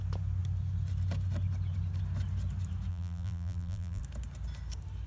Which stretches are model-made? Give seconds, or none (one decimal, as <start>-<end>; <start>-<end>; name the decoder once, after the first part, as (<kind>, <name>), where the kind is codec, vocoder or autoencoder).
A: 2.9-4.0 (vocoder, BigVGAN v2)